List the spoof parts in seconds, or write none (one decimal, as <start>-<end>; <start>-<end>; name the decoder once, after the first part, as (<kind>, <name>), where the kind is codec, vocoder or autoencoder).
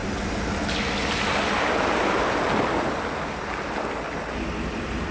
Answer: none